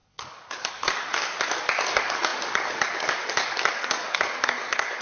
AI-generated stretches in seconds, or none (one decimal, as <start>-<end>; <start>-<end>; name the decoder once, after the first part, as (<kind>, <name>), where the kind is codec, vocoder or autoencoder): 0.0-5.0 (codec, DAC)